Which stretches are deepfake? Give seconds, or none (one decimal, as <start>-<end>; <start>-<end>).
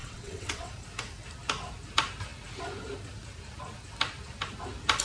0.0-0.7